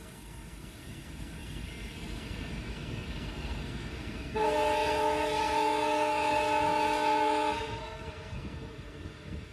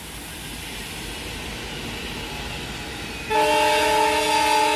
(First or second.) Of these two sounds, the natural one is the second